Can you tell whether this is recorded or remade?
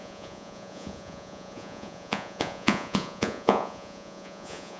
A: remade